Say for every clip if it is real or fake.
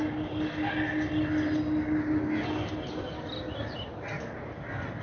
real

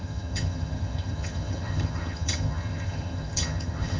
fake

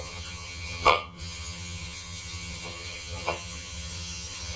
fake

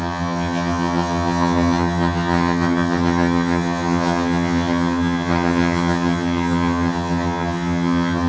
fake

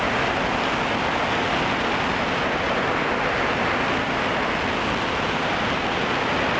real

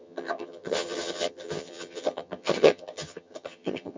fake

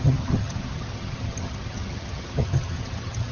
fake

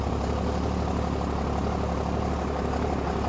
real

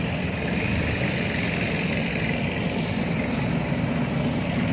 real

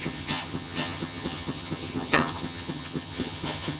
fake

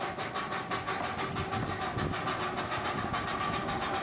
real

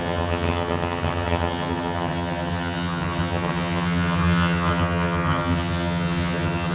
fake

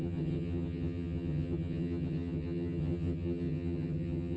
fake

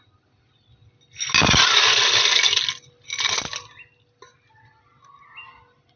real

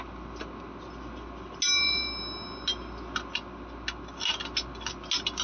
real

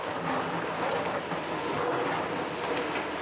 real